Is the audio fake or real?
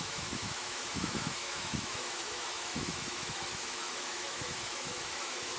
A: fake